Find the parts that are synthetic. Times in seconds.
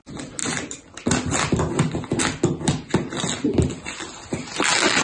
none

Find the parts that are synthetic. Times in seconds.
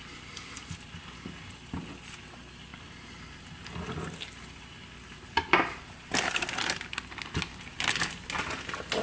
none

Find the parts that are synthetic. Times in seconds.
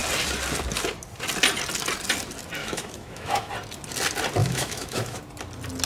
2.6-3.5; 4.4-5.2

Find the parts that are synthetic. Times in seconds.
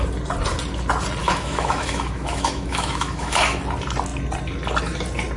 1.2-3.6